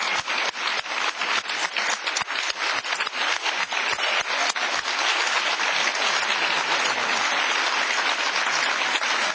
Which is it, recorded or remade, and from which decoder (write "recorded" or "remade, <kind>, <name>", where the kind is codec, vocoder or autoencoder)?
recorded